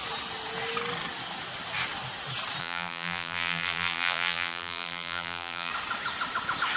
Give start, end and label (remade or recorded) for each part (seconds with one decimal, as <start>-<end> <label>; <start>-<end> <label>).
0.0-2.6 recorded; 2.6-5.7 remade; 5.7-6.8 recorded